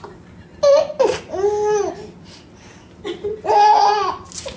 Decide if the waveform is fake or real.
real